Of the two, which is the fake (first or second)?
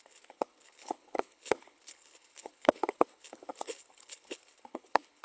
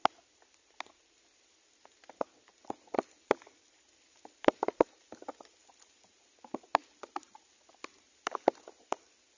first